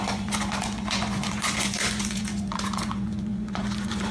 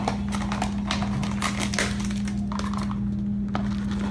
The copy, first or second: first